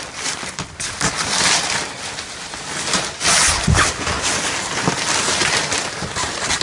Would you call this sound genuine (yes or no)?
yes